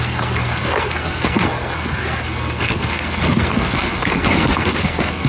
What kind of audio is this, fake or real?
fake